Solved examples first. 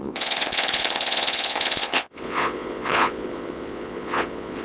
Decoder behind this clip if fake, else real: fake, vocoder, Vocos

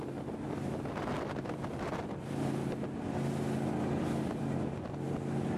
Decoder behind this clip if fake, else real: real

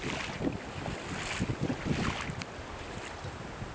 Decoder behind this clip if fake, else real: real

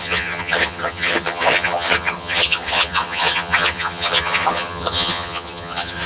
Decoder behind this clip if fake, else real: fake, vocoder, HiFi-GAN